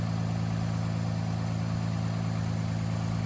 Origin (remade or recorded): recorded